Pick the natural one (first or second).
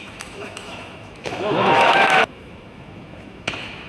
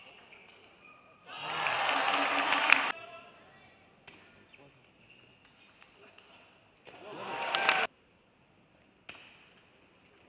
second